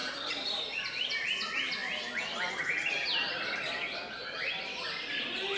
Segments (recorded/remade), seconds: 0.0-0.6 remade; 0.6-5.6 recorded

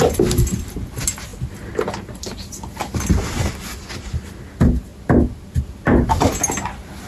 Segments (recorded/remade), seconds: 0.0-7.1 recorded

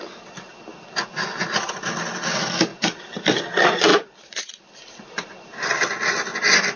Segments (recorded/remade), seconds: 0.0-3.9 recorded; 3.9-4.6 remade; 4.6-6.8 recorded

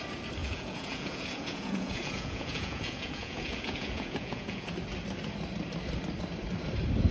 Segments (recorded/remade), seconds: 0.0-0.4 recorded; 0.4-4.7 remade; 4.7-7.1 recorded